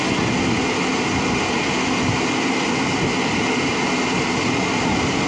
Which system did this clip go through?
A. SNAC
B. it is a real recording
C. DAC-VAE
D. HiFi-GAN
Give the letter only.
B